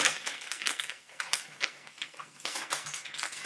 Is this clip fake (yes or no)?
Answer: yes